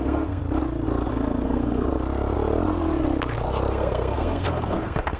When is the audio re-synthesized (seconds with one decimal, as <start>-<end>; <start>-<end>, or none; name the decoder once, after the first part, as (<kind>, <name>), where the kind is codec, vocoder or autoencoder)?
0.0-0.4 (codec, SNAC); 1.1-1.9; 3.7-5.2